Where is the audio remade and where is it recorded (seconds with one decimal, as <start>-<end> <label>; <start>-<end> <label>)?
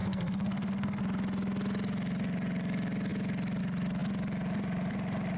0.0-1.0 remade; 1.0-5.4 recorded